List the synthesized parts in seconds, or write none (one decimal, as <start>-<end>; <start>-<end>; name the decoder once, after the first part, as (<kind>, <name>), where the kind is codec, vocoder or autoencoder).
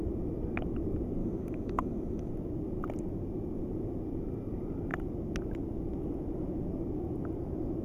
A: 1.2-2.3 (autoencoder, DAC-VAE)